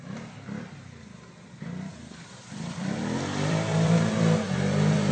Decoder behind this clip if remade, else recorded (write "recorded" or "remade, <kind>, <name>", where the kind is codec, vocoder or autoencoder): remade, vocoder, BigVGAN v2